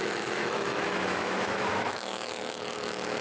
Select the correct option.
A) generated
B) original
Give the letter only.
A